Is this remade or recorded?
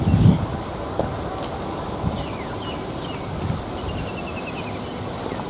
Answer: recorded